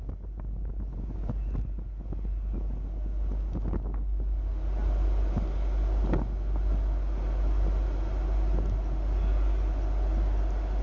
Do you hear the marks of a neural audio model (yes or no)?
no